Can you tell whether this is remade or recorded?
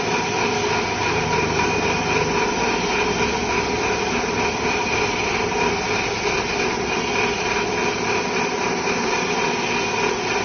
recorded